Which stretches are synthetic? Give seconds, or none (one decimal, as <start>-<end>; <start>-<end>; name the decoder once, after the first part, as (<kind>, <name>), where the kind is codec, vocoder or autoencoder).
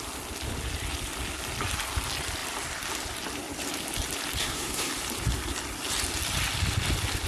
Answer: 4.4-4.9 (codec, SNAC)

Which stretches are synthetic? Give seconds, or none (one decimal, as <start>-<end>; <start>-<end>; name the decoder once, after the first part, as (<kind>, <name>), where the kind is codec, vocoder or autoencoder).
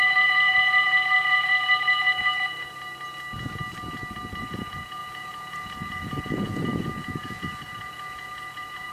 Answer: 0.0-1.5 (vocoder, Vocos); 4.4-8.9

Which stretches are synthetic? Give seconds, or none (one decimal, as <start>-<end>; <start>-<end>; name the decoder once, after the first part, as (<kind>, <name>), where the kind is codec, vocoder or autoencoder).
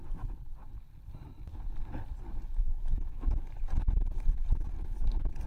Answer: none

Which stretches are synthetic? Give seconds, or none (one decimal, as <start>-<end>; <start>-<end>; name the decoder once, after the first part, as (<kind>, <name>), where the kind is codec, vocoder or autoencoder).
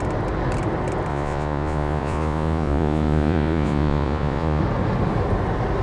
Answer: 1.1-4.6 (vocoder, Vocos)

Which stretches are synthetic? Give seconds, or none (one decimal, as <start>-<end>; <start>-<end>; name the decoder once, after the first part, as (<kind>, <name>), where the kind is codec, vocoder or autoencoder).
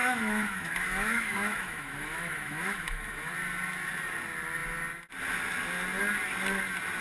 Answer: 0.0-3.3 (autoencoder, DAC-VAE)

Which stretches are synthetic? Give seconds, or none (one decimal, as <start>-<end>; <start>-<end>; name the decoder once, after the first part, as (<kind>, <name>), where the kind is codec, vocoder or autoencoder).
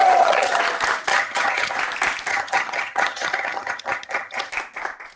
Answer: 0.0-0.6 (vocoder, HiFi-GAN); 1.1-1.8; 2.3-4.5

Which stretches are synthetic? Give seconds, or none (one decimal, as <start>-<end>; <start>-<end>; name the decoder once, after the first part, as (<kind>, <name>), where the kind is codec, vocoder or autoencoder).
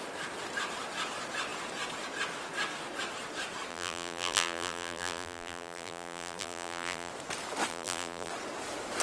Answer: 3.7-7.1 (vocoder, BigVGAN v2); 7.7-8.3